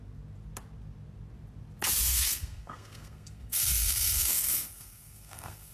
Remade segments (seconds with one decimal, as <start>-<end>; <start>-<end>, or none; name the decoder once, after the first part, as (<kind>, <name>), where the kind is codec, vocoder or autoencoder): 2.1-5.7 (codec, SNAC)